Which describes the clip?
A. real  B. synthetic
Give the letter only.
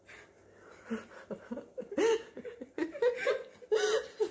A